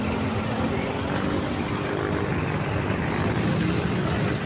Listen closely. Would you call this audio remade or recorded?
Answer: recorded